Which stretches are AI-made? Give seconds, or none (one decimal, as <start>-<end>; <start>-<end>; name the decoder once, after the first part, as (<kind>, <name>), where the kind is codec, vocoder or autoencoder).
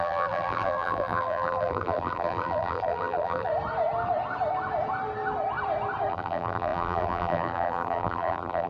0.0-3.5 (vocoder, BigVGAN v2); 6.1-8.7